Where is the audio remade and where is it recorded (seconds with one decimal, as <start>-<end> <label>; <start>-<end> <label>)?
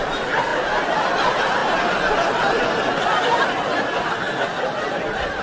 0.0-5.4 recorded